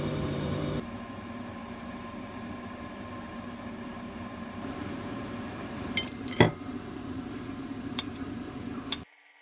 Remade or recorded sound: remade